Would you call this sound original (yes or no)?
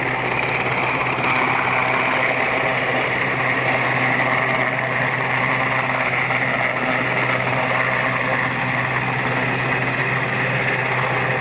yes